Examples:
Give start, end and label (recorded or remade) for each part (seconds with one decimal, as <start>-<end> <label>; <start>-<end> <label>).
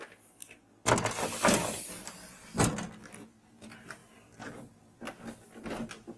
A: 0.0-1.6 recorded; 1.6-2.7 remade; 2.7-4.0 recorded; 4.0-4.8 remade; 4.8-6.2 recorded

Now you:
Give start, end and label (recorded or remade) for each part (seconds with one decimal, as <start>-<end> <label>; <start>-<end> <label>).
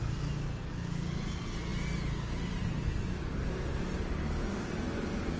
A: 0.0-5.4 recorded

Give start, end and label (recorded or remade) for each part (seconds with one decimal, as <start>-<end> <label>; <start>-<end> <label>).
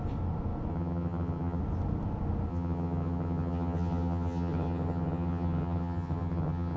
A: 0.0-0.7 recorded; 0.7-1.6 remade; 1.6-2.5 recorded; 2.5-6.8 remade